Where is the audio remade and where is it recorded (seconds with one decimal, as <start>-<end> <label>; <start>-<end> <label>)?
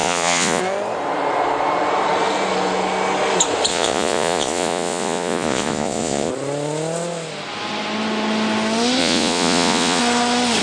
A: 0.0-0.6 remade; 0.6-3.7 recorded; 3.7-6.3 remade; 6.3-9.0 recorded; 9.0-10.0 remade; 10.0-10.6 recorded